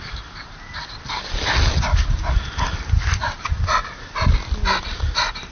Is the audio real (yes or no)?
yes